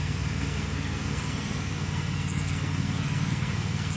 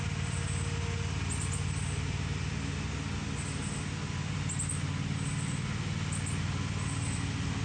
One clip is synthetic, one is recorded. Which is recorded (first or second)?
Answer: second